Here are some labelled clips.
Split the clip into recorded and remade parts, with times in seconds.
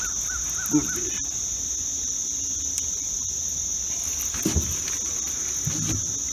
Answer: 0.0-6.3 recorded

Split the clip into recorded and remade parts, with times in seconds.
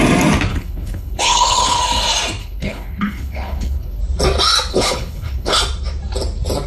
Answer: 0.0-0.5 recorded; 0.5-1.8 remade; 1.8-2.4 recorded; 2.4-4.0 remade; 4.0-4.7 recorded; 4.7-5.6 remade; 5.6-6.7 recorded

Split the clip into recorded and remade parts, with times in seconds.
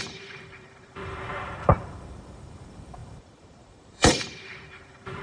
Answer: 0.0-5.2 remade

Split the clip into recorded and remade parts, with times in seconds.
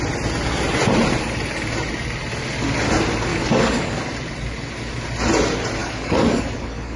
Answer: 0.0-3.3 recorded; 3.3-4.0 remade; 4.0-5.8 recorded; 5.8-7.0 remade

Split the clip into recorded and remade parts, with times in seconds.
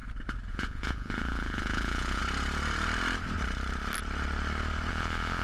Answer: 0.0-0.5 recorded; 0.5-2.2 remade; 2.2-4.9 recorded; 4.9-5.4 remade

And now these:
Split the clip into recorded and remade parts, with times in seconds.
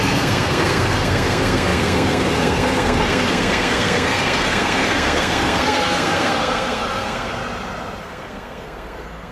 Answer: 0.0-7.4 remade; 7.4-8.0 recorded; 8.0-9.3 remade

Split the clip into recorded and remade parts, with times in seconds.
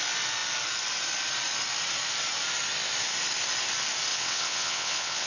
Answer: 0.0-4.1 recorded; 4.1-5.3 remade